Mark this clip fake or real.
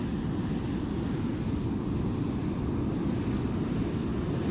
real